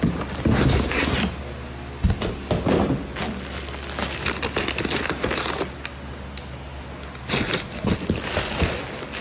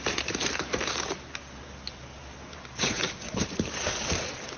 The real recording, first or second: first